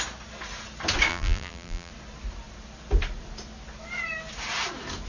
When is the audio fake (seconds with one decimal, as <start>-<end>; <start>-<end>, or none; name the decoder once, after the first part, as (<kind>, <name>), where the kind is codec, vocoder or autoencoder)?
1.1-1.9 (vocoder, BigVGAN v2)